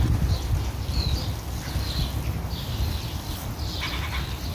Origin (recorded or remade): recorded